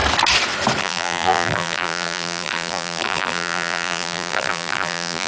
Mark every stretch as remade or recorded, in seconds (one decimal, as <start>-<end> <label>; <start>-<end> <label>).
0.0-0.8 recorded; 0.8-5.3 remade